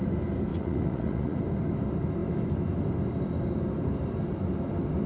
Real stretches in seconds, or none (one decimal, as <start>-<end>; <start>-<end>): 0.0-0.5; 1.4-5.1